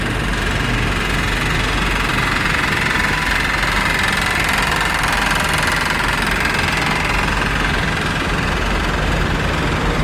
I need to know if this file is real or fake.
real